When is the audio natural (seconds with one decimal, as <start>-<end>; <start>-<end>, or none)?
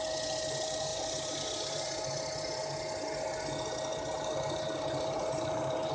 0.0-0.9; 2.2-3.9